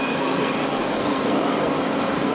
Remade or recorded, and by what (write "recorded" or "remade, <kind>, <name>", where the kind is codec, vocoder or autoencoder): remade, codec, SNAC